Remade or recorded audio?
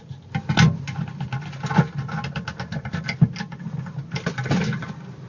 recorded